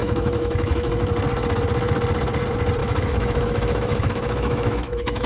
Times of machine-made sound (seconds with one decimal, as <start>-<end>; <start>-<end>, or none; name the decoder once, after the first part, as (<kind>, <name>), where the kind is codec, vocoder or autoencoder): 0.0-0.9 (autoencoder, DAC-VAE); 2.8-5.3